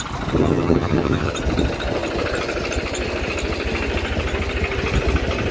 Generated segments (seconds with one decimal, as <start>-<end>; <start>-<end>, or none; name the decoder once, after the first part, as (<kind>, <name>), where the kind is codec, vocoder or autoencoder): 0.4-1.3 (vocoder, HiFi-GAN)